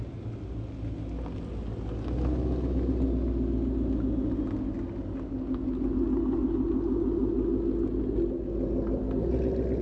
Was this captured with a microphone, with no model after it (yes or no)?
yes